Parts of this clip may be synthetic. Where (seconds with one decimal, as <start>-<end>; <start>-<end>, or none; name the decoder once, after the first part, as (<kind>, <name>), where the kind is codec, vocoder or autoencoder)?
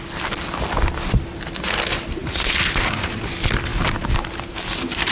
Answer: 2.2-3.1 (vocoder, BigVGAN v2); 3.7-5.1